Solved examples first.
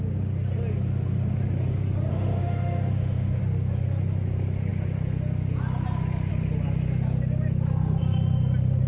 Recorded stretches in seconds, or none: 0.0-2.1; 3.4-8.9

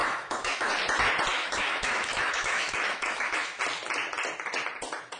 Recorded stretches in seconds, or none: 0.7-1.3; 3.6-5.2

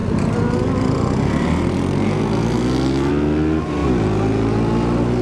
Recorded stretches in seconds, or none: 0.0-5.2

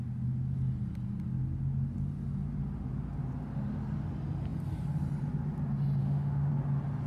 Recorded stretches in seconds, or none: 0.0-6.0; 6.5-7.1

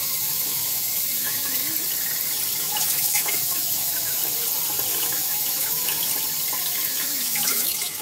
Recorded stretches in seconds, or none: 1.6-2.6; 4.2-4.9; 6.1-6.6

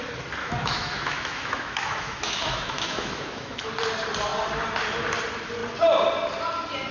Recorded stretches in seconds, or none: 0.0-0.4; 3.7-6.9

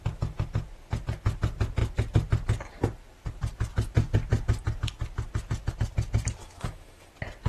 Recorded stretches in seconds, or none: 0.0-6.4; 7.1-7.5

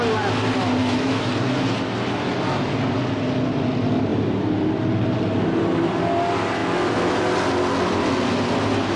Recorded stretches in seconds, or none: 0.0-0.8; 1.3-6.6; 7.2-9.0